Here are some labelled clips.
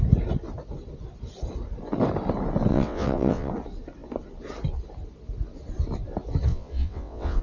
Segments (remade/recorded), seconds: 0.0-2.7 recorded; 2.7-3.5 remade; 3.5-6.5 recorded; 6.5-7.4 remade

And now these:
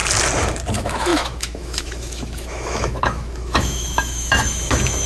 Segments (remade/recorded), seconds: 0.0-0.7 recorded; 0.7-5.1 remade

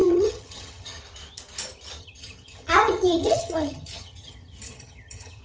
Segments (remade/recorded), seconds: 0.0-1.0 remade; 1.0-2.0 recorded; 2.0-5.4 remade